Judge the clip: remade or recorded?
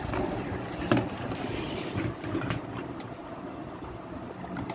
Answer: remade